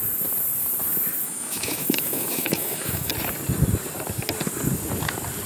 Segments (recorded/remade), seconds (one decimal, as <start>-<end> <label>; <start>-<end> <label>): 0.0-1.2 recorded; 1.2-3.1 remade; 3.1-5.5 recorded